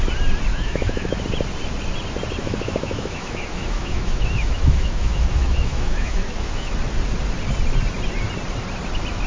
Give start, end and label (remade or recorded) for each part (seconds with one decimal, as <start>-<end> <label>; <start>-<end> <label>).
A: 0.0-0.5 recorded; 0.5-1.2 remade; 1.2-2.4 recorded; 2.4-6.7 remade; 6.7-9.3 recorded